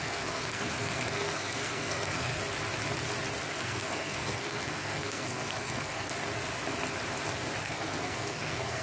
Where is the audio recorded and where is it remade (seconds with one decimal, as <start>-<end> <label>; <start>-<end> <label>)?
0.0-2.4 remade; 2.4-3.6 recorded; 3.6-6.1 remade; 6.1-7.6 recorded; 7.6-8.8 remade